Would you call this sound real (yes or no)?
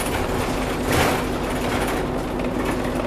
yes